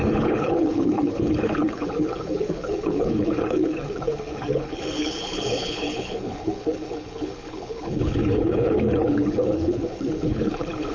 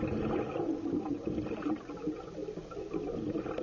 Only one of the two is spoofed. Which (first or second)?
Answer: first